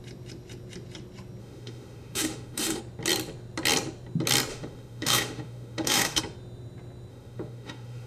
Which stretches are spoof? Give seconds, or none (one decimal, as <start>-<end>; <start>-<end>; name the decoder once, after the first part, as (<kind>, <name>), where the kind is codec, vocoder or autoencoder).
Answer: 1.4-2.8 (autoencoder, DAC-VAE); 4.5-6.2; 7.1-8.1